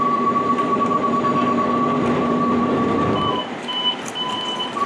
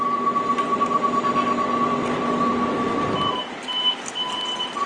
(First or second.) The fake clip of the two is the first